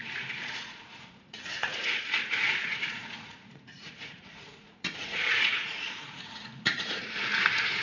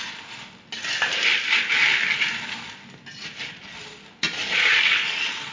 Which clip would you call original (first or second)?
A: second